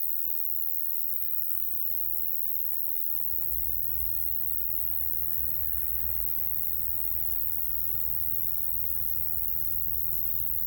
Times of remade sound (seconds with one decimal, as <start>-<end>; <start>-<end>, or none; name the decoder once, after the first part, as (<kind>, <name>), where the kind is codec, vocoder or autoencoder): 1.1-1.8 (autoencoder, DAC-VAE)